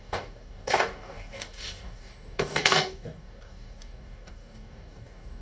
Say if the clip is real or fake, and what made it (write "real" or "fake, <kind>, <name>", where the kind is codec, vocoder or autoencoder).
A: fake, codec, DAC